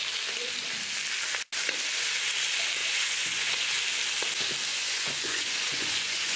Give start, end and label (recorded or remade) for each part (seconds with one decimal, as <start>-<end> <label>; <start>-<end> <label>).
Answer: 0.0-2.8 recorded; 2.8-3.7 remade; 3.7-4.7 recorded; 4.7-6.4 remade

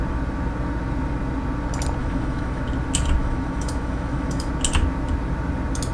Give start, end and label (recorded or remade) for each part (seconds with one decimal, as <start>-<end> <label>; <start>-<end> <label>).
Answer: 0.0-2.0 recorded; 2.0-2.6 remade; 2.6-3.2 recorded; 3.2-4.5 remade; 4.5-5.9 recorded

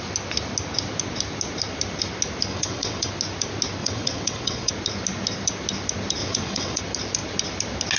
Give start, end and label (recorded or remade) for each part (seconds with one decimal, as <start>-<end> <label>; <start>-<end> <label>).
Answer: 0.0-2.5 recorded; 2.5-3.1 remade; 3.1-3.8 recorded; 3.8-4.7 remade; 4.7-6.2 recorded; 6.2-6.8 remade; 6.8-8.0 recorded